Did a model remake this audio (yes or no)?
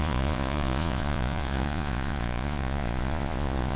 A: yes